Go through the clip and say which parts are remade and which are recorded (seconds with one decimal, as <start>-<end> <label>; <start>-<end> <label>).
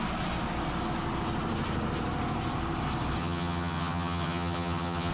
0.0-3.2 recorded; 3.2-5.1 remade